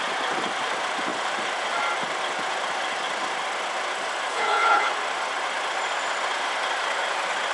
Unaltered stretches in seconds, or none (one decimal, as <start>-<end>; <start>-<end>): 0.0-4.3; 4.9-7.5